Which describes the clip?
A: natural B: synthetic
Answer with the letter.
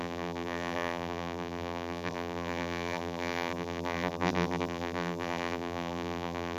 B